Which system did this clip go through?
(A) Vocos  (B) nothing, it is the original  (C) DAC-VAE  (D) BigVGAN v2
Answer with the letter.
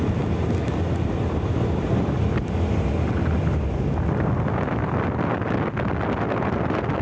B